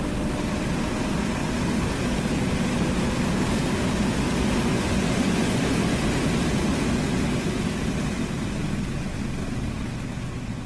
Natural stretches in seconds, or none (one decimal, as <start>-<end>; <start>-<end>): 0.0-4.7; 6.0-10.7